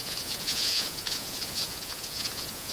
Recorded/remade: remade